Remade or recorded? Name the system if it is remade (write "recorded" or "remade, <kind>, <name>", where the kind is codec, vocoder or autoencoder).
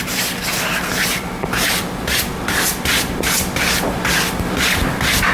recorded